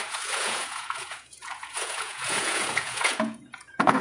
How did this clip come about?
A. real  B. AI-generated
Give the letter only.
B